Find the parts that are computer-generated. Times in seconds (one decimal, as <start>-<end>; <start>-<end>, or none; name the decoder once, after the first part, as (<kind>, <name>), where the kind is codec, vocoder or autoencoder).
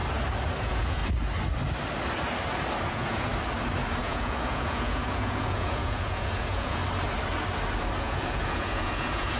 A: 0.6-1.0 (vocoder, Vocos); 2.9-3.3; 4.0-6.8; 8.0-9.4